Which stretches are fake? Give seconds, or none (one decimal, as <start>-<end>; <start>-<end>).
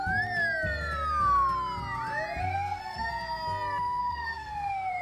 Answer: 2.4-3.1; 4.0-5.0